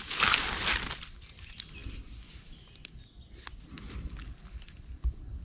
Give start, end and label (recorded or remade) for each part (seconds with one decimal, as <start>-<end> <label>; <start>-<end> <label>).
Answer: 0.0-5.4 recorded